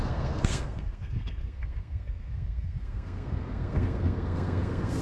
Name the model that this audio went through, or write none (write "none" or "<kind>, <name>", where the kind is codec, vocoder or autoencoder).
codec, SNAC